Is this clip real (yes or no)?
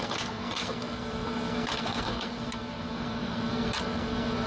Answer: no